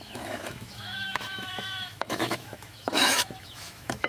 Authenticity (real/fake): fake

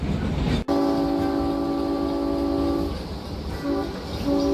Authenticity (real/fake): real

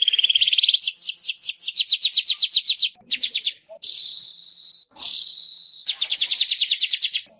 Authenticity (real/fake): real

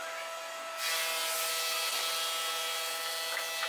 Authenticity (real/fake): real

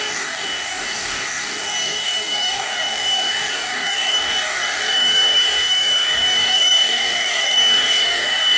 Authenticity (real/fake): fake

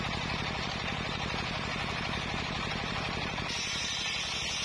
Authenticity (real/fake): fake